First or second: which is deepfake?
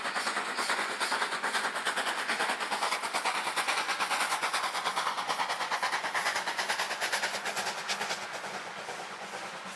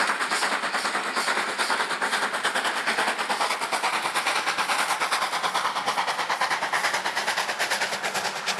first